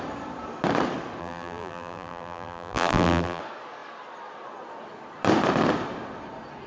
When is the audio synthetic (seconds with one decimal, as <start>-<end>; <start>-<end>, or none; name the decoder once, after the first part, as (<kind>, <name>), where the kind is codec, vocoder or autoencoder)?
1.2-3.4 (vocoder, BigVGAN v2)